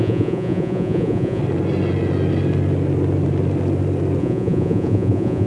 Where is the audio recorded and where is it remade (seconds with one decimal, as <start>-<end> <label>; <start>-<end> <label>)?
0.0-1.4 remade; 1.4-4.2 recorded; 4.2-5.5 remade